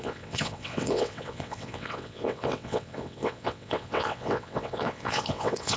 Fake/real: fake